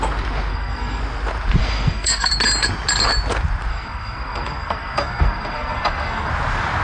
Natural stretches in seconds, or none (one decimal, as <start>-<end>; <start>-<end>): 0.0-0.5; 1.0-1.6; 2.3-3.7; 6.3-6.8

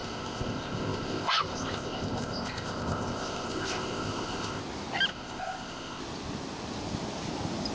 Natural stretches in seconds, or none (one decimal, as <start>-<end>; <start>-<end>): 4.6-5.1; 6.0-7.7

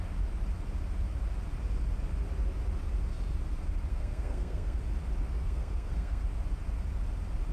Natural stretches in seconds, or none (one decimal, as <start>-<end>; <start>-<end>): 0.0-3.9; 4.8-5.4; 6.2-7.5

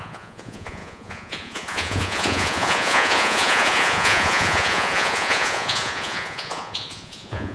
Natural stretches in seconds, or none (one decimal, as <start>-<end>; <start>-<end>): none

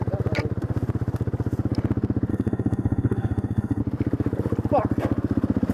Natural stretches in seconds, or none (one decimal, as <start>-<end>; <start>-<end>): 0.0-2.3; 3.8-5.7

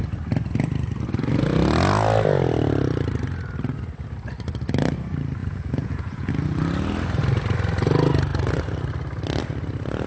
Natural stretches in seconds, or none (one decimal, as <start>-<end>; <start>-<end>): 0.0-5.4; 6.3-10.1

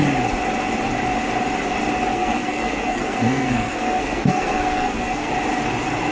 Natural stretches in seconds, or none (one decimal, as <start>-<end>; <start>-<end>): 0.0-2.1; 5.3-6.1